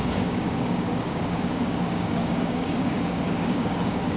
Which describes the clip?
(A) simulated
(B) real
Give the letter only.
A